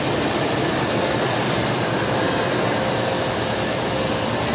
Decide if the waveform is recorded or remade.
remade